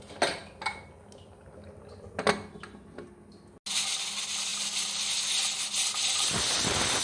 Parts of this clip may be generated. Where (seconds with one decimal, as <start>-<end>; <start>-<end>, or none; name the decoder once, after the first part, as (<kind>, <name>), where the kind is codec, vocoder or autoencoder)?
none